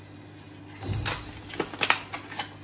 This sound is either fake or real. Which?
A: real